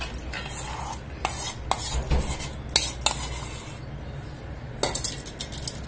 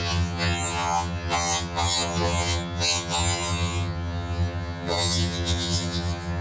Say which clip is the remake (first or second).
second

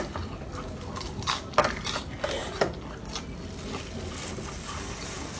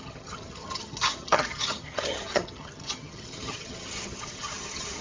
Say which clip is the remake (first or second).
second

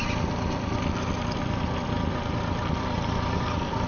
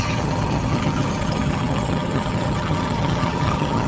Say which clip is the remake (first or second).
second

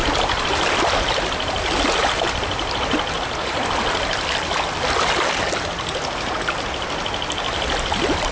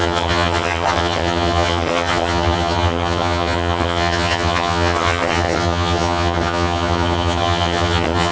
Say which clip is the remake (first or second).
second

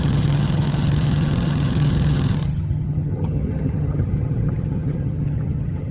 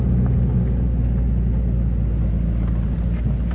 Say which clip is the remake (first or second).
first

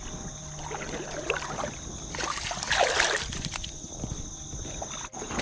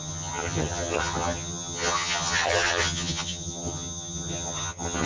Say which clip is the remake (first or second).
second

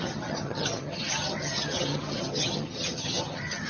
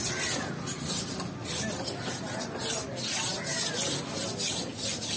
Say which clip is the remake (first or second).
first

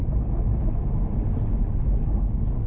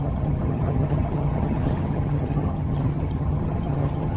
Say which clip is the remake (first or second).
second